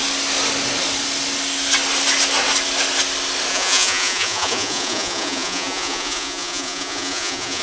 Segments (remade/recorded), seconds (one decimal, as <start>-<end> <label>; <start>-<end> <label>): 0.0-3.5 recorded; 3.5-7.6 remade